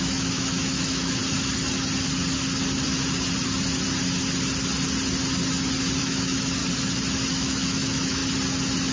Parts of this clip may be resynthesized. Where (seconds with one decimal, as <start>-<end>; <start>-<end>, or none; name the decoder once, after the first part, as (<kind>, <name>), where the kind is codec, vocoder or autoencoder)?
0.0-1.2 (autoencoder, DAC-VAE); 6.0-6.6; 7.3-8.2